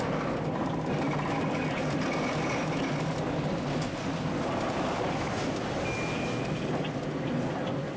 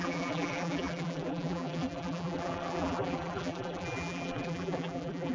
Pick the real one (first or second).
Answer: first